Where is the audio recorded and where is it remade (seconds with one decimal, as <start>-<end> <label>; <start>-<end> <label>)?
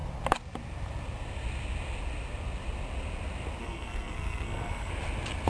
0.0-3.6 recorded; 3.6-4.9 remade; 4.9-5.5 recorded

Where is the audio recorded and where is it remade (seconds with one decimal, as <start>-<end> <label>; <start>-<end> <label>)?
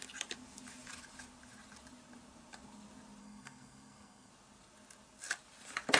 0.0-3.2 recorded; 3.2-4.3 remade; 4.3-6.0 recorded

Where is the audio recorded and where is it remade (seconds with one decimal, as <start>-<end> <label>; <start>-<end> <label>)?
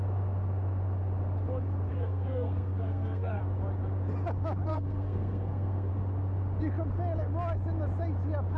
0.0-1.9 recorded; 1.9-3.4 remade; 3.4-4.7 recorded; 4.7-5.9 remade; 5.9-8.6 recorded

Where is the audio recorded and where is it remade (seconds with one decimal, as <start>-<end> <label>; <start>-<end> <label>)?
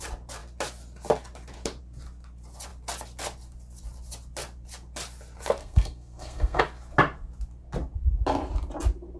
0.0-5.6 recorded; 5.6-6.6 remade; 6.6-9.2 recorded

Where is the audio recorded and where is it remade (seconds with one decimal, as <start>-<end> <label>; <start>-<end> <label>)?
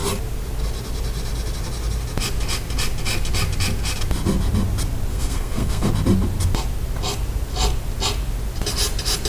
0.0-5.1 recorded; 5.1-5.9 remade; 5.9-9.3 recorded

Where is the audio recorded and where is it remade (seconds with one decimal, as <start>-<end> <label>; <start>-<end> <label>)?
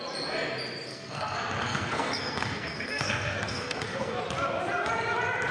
0.0-0.9 recorded; 0.9-4.2 remade; 4.2-5.5 recorded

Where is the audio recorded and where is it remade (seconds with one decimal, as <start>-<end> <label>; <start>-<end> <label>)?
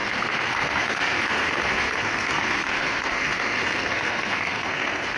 0.0-5.2 remade